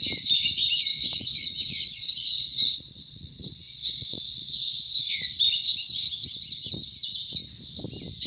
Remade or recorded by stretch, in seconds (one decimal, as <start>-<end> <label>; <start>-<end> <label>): 0.0-0.9 recorded; 0.9-5.1 remade; 5.1-8.3 recorded